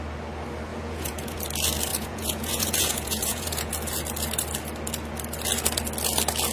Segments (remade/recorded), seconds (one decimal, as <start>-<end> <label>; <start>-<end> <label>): 0.0-0.7 recorded; 0.7-1.4 remade; 1.4-1.9 recorded; 1.9-3.7 remade; 3.7-6.5 recorded